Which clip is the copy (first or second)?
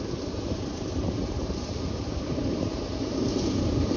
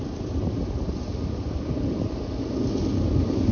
first